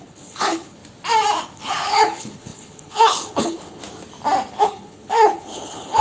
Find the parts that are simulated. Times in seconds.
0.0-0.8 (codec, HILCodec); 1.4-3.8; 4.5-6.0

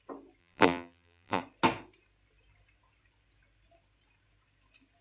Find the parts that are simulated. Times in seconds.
0.4-1.4 (vocoder, BigVGAN v2)

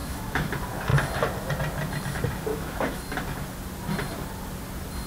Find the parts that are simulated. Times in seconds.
0.0-0.5 (autoencoder, DAC-VAE); 2.5-3.0

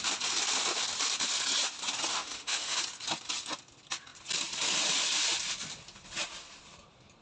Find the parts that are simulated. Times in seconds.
2.1-2.8 (autoencoder, DAC-VAE)

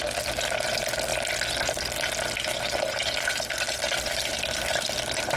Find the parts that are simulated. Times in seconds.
none

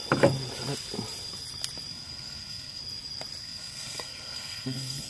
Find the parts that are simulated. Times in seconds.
1.9-2.8 (codec, SNAC); 3.4-5.1